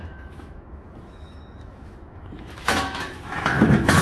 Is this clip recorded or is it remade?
remade